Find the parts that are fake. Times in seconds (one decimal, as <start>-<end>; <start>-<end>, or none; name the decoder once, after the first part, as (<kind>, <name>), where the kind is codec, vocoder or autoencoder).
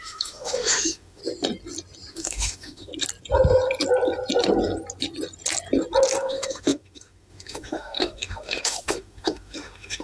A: 0.0-1.2 (autoencoder, DAC-VAE); 2.1-2.9; 6.2-10.0